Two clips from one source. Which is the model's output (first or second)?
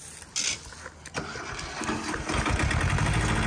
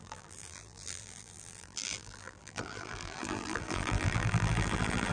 second